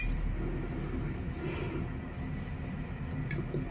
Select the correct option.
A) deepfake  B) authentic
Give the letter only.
B